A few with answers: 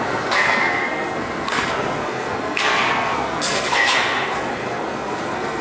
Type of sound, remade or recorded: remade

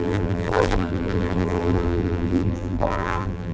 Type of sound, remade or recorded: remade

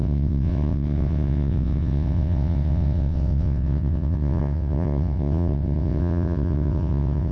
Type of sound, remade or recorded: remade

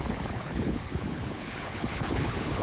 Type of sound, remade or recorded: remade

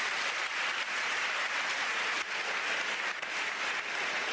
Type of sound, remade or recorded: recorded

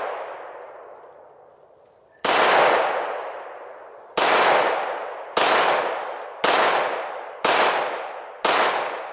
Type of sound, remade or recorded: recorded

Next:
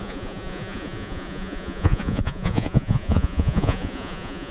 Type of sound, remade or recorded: remade